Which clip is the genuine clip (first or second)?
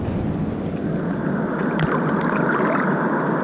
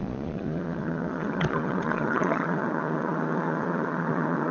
first